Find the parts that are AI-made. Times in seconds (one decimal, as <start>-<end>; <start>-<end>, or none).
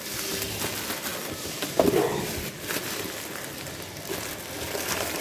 none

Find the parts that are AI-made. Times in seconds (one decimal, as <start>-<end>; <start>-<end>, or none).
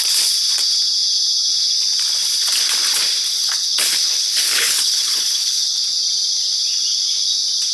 3.3-5.8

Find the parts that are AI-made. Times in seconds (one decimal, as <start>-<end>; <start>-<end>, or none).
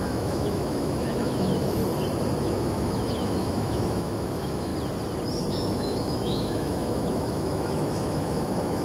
0.0-1.8; 2.4-4.7; 5.5-8.8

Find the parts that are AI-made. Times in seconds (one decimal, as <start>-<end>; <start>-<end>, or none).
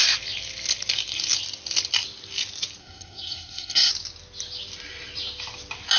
2.8-3.9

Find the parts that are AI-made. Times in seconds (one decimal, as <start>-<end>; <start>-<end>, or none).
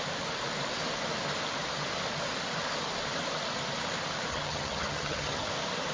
4.3-5.5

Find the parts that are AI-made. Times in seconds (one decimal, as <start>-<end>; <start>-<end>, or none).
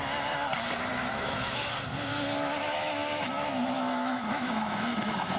0.9-1.7; 2.1-5.4